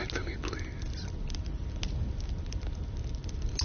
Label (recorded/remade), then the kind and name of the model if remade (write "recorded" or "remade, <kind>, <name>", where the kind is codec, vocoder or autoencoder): recorded